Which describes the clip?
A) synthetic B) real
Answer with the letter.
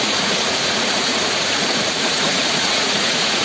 A